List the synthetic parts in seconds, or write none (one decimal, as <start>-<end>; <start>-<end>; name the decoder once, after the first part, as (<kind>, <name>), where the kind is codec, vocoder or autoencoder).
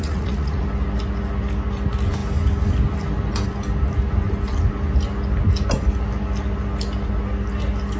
0.0-0.6 (vocoder, Vocos)